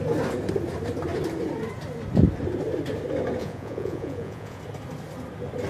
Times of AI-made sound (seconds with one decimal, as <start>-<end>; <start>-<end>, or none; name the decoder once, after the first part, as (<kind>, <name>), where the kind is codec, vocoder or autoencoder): 3.4-4.6 (vocoder, Vocos)